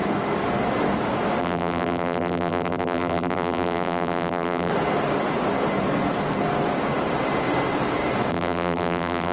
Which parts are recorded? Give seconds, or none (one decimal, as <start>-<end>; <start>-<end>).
0.0-1.4; 4.7-8.3

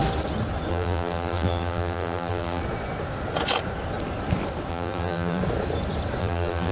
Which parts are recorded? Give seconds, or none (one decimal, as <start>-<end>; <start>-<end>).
0.0-0.7; 2.6-4.7; 5.4-6.2

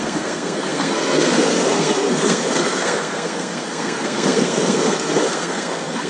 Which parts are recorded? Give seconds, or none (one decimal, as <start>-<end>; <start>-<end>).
none

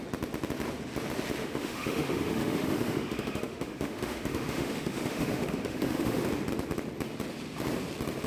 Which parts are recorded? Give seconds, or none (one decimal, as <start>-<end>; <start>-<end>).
0.0-1.4; 6.2-8.3

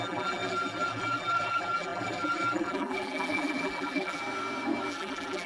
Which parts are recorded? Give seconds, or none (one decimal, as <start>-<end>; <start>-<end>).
4.2-4.9

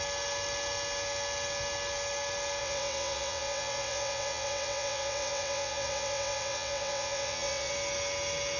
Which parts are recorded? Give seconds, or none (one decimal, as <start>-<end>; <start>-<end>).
0.0-2.6; 7.7-8.6